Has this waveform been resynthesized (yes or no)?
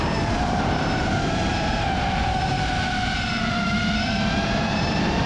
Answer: yes